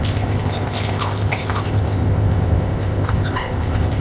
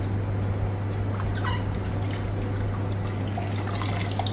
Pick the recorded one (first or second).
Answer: second